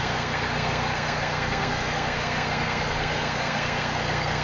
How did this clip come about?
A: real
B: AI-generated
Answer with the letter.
B